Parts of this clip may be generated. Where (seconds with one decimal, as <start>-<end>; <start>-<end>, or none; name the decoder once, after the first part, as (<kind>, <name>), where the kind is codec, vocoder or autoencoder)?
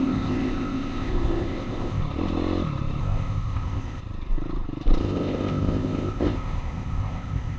0.0-2.0 (codec, ZipCodec); 3.0-4.0; 5.0-7.6